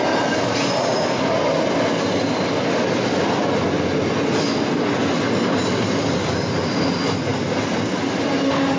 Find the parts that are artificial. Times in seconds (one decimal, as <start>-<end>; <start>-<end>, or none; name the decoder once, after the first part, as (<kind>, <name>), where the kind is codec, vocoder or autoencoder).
none